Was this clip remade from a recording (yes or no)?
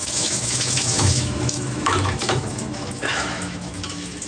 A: yes